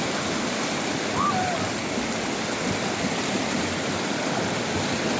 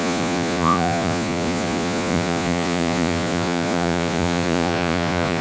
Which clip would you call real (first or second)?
first